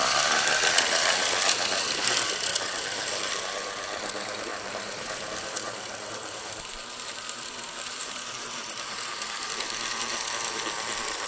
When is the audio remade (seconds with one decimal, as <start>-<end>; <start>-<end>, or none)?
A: 2.5-3.4; 4.5-9.5